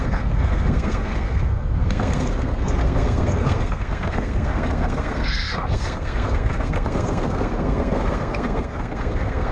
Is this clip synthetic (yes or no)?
yes